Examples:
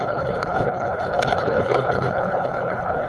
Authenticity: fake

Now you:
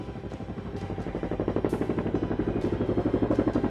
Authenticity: real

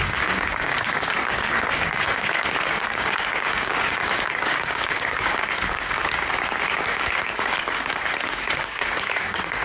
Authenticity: fake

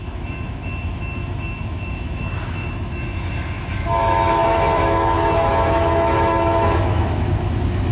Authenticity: fake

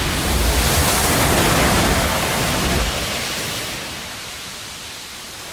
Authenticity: real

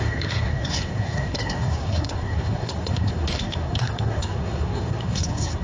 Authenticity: fake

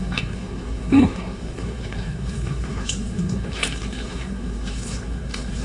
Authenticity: fake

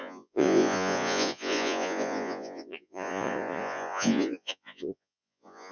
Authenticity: fake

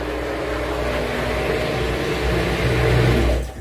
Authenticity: real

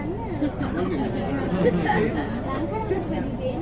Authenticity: real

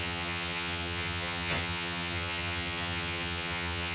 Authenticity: fake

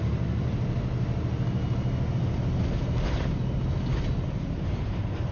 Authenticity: real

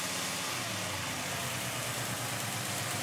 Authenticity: real